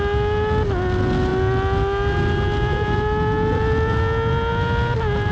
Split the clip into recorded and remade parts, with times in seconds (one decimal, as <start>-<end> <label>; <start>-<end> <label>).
0.0-5.3 recorded